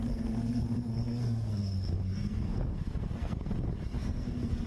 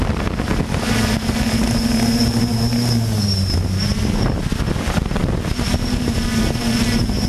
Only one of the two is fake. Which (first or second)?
first